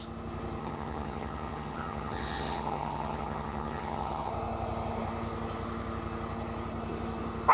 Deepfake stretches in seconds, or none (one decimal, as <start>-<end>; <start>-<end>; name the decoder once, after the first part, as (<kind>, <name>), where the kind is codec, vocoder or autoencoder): 0.6-4.3 (vocoder, HiFi-GAN)